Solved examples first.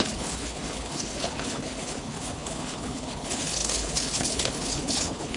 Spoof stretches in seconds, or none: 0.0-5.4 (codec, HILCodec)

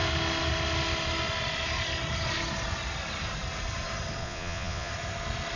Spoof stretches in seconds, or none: 4.2-4.9 (vocoder, Vocos)

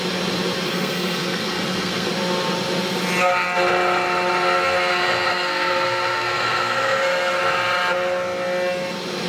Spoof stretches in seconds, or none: 0.7-2.1 (codec, SNAC); 5.3-7.4

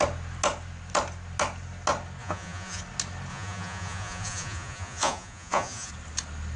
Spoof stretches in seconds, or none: 2.2-2.8 (vocoder, Vocos); 3.3-5.9

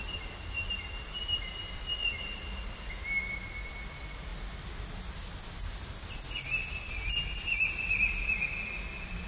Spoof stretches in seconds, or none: none

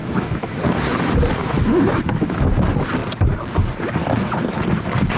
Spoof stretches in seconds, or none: 0.0-0.6 (autoencoder, DAC-VAE); 1.4-2.5

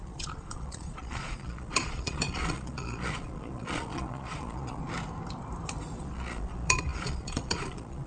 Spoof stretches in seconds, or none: 0.0-4.8 (vocoder, Vocos); 6.0-8.1